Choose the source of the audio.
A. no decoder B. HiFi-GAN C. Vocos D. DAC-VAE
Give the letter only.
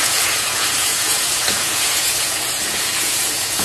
C